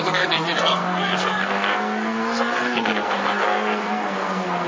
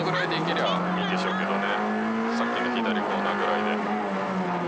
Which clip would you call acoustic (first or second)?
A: second